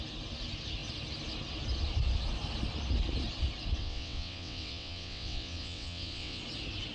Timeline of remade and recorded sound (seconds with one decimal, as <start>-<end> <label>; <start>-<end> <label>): 0.0-3.8 recorded; 3.8-6.4 remade; 6.4-6.9 recorded